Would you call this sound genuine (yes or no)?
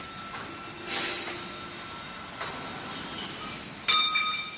yes